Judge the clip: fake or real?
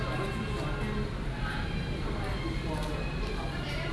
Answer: real